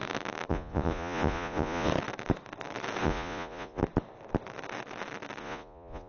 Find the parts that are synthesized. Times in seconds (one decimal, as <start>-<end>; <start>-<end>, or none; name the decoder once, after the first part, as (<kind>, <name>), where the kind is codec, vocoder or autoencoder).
0.5-1.9 (vocoder, Vocos); 3.0-3.8; 5.4-6.1